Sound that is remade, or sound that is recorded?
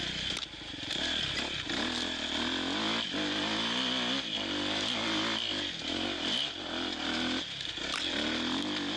recorded